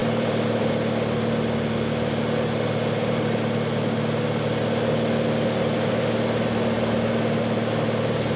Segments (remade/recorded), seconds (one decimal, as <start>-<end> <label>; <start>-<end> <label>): 0.0-0.7 remade; 0.7-8.4 recorded